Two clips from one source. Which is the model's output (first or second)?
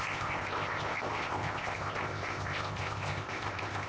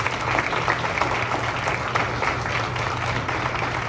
first